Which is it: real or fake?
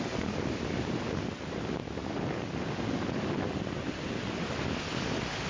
real